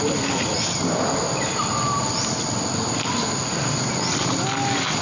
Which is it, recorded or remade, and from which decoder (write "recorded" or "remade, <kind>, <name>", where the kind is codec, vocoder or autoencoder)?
recorded